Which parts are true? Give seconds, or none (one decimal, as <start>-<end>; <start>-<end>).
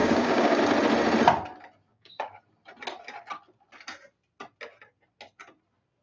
0.6-1.9; 2.4-6.0